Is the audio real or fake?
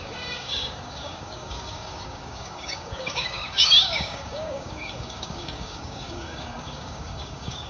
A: fake